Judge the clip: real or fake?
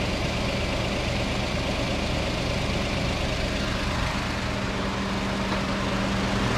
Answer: real